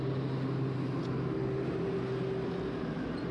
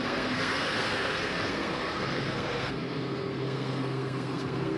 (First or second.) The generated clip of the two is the second